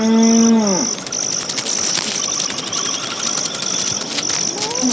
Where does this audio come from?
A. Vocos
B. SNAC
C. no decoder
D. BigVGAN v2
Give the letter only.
C